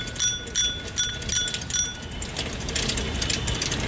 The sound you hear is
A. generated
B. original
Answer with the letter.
B